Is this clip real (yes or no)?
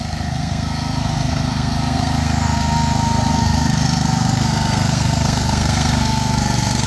no